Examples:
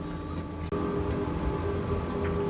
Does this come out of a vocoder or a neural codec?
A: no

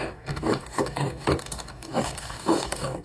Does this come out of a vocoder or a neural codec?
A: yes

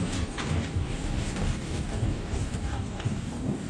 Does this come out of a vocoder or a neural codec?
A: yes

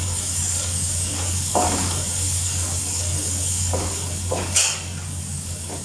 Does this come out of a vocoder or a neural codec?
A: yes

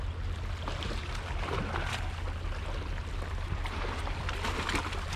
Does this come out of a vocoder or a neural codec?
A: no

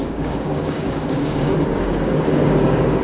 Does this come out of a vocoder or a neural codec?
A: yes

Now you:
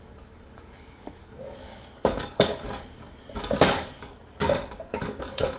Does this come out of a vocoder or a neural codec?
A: yes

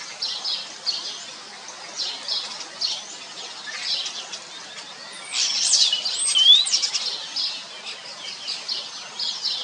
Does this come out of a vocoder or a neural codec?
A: no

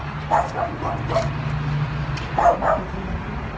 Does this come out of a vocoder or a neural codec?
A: no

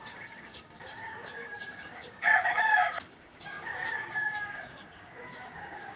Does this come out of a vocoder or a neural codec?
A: yes